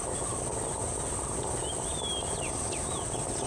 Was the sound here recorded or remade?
recorded